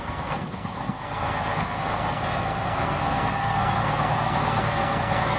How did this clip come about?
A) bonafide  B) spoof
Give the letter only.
B